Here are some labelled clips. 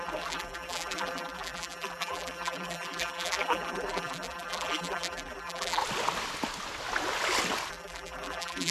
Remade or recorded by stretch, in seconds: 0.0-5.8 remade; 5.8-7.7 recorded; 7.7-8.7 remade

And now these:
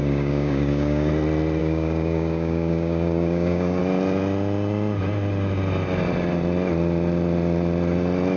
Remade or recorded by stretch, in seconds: 0.0-1.1 remade; 1.1-1.6 recorded; 1.6-3.8 remade; 3.8-8.4 recorded

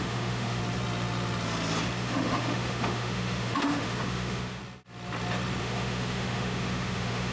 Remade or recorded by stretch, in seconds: 0.0-0.6 remade; 0.6-2.0 recorded; 2.0-4.6 remade; 4.6-5.6 recorded; 5.6-7.3 remade